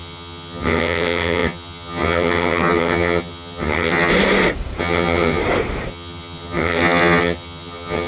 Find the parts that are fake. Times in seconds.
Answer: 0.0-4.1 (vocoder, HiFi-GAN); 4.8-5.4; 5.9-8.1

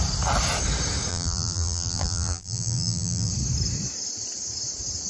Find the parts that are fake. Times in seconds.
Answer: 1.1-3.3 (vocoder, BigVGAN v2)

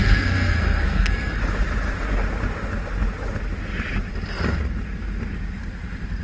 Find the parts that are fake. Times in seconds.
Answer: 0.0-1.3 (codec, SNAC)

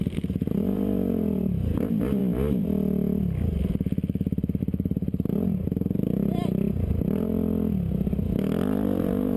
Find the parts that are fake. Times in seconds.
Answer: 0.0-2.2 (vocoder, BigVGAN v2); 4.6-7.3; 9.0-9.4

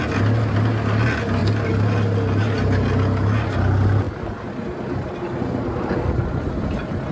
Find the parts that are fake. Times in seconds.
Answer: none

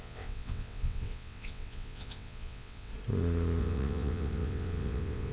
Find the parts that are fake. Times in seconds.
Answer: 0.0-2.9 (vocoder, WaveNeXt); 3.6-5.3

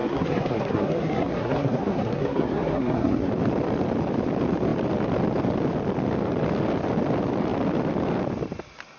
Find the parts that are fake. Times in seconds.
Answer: 0.0-3.3 (codec, SNAC)